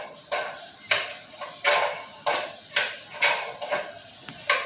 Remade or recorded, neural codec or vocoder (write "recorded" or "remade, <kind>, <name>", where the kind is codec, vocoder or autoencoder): recorded